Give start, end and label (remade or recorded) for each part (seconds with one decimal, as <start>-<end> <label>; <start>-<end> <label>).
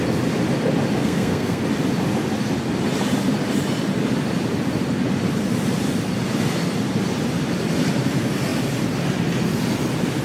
0.0-1.0 recorded; 1.0-1.6 remade; 1.6-10.2 recorded